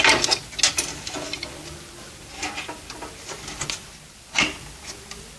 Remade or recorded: recorded